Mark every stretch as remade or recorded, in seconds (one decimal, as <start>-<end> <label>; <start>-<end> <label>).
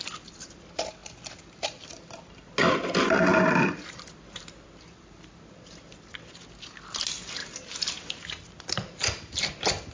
0.0-9.9 recorded